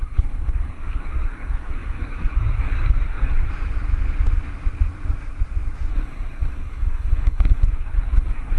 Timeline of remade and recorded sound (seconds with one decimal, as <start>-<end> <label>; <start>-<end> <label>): 0.0-3.5 remade; 3.5-5.9 recorded; 5.9-8.6 remade